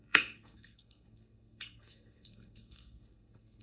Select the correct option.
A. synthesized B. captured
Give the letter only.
A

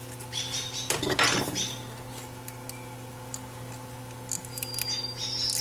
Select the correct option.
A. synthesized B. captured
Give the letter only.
B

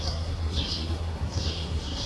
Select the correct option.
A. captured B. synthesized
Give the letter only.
B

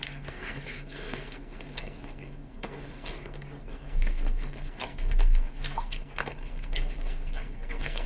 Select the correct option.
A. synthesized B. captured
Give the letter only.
A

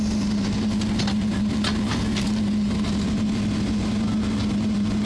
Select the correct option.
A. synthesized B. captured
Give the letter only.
B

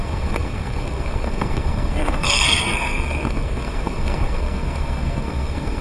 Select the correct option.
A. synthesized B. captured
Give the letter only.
A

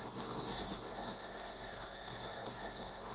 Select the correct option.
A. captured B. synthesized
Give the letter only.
B